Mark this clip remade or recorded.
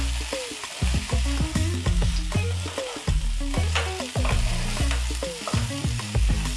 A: recorded